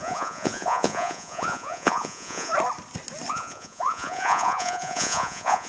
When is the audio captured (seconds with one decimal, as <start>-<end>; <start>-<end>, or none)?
2.5-3.3